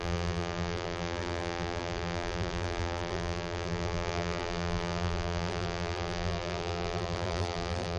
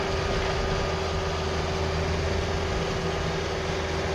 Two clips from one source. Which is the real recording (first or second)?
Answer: second